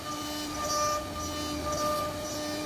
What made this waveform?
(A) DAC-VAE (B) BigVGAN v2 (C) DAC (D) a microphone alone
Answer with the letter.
D